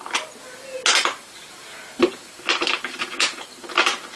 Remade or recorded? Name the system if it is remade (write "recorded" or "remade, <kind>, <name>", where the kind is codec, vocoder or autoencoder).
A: recorded